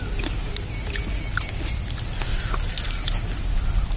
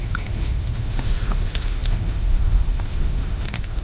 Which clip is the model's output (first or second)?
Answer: second